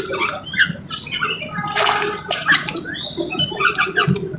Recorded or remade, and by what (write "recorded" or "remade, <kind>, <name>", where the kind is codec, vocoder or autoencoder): recorded